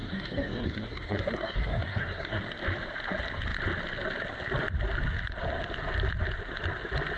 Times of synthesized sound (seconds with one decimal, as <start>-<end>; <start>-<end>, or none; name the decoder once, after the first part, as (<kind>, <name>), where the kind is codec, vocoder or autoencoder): 0.0-2.4 (codec, SNAC)